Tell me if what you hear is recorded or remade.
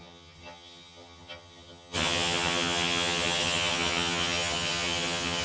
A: remade